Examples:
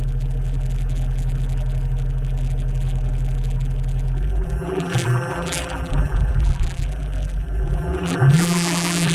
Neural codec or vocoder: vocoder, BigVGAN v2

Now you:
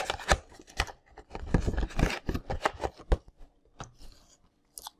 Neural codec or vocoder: none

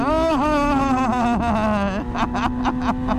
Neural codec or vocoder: none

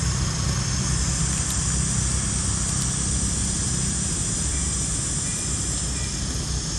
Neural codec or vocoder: none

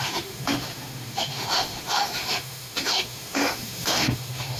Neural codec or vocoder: autoencoder, DAC-VAE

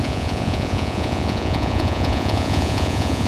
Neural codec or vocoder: vocoder, Vocos